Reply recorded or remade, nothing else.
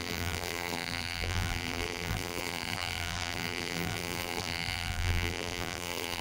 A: remade